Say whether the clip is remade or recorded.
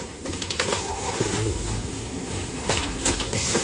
remade